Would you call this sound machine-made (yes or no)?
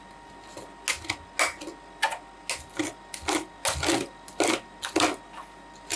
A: no